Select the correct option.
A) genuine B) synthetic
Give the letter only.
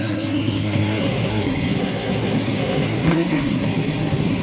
B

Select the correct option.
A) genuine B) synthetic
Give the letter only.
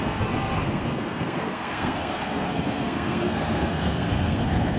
B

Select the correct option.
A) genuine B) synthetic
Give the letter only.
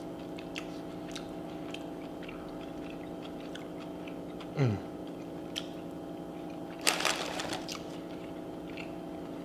A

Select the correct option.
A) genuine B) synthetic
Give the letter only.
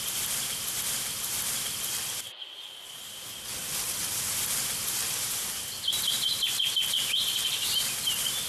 A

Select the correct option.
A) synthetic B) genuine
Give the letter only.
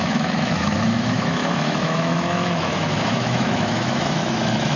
A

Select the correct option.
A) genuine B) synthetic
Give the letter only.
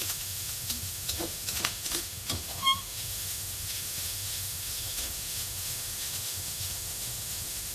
B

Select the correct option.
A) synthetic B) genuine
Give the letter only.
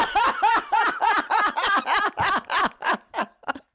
A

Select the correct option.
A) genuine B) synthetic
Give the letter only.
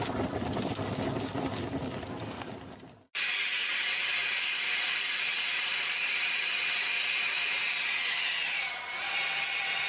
A